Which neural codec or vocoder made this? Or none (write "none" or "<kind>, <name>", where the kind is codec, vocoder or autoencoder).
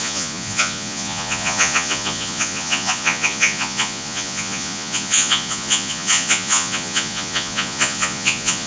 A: vocoder, Vocos